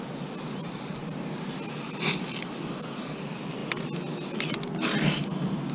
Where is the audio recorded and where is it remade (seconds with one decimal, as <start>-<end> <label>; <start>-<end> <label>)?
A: 0.0-5.7 recorded

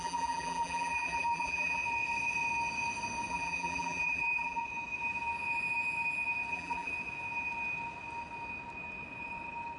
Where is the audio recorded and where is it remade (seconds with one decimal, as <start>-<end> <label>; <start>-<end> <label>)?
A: 0.0-1.8 remade; 1.8-3.3 recorded; 3.3-4.6 remade; 4.6-6.5 recorded; 6.5-6.9 remade; 6.9-9.8 recorded

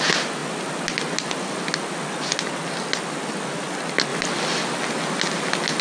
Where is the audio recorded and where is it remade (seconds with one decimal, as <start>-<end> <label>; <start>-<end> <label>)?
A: 0.0-5.8 recorded

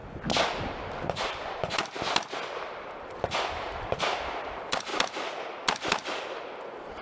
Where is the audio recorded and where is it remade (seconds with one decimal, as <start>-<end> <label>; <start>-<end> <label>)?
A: 0.0-0.5 recorded; 0.5-1.8 remade; 1.8-2.7 recorded; 2.7-4.9 remade; 4.9-6.4 recorded; 6.4-7.0 remade

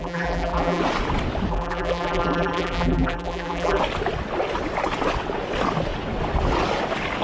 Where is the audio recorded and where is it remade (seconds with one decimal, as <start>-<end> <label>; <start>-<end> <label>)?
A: 0.0-0.8 remade; 0.8-1.5 recorded; 1.5-3.8 remade; 3.8-7.2 recorded

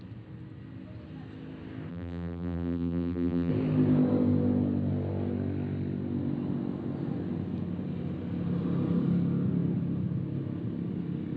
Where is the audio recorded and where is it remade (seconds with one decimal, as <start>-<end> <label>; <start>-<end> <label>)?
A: 0.0-1.9 recorded; 1.9-3.5 remade; 3.5-11.4 recorded

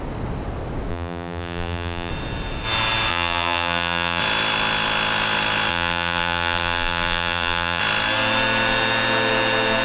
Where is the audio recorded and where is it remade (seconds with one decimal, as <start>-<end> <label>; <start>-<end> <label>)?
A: 0.0-0.9 recorded; 0.9-2.1 remade; 2.1-3.1 recorded; 3.1-4.2 remade; 4.2-5.7 recorded; 5.7-7.8 remade; 7.8-9.8 recorded

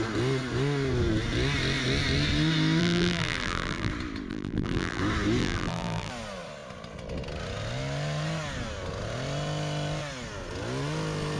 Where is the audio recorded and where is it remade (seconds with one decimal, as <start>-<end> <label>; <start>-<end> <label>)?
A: 0.0-2.8 recorded; 2.8-3.9 remade; 3.9-4.3 recorded; 4.3-5.0 remade; 5.0-5.4 recorded; 5.4-6.1 remade; 6.1-11.4 recorded